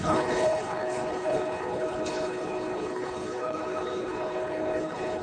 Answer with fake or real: fake